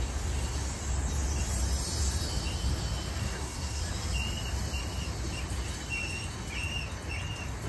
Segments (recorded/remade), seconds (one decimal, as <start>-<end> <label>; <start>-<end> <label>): 0.0-3.2 recorded; 3.2-3.8 remade; 3.8-7.7 recorded

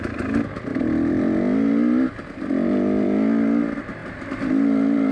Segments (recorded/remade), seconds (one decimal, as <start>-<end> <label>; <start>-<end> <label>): 0.0-5.1 recorded

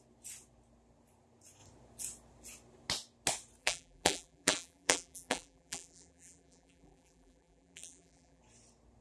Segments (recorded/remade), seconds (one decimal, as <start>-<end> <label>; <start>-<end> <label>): 0.0-3.6 recorded; 3.6-8.4 remade; 8.4-9.0 recorded